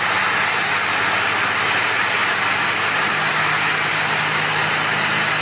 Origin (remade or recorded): recorded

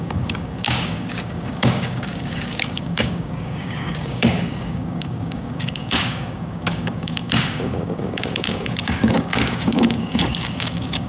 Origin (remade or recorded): remade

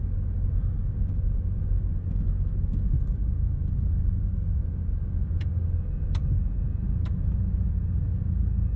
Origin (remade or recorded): recorded